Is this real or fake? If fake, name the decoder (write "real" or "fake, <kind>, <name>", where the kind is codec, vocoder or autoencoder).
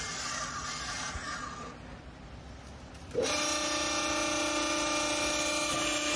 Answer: real